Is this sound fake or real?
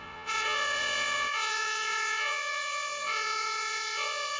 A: fake